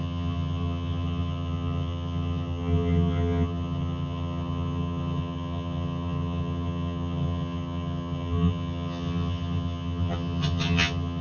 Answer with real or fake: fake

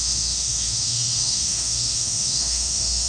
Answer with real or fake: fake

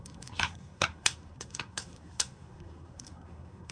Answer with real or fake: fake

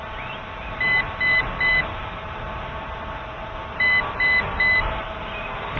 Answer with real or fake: real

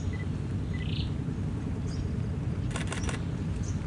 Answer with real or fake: real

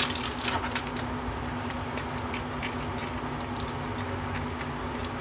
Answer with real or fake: real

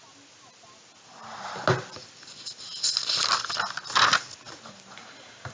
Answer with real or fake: real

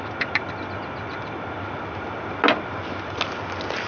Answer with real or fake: real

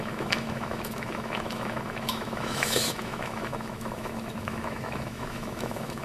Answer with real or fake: fake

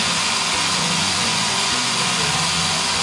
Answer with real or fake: fake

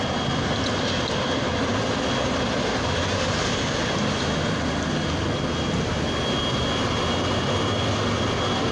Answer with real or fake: real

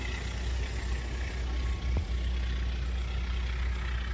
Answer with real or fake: real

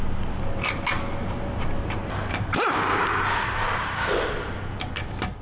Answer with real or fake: real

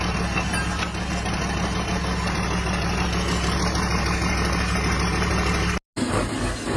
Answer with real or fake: real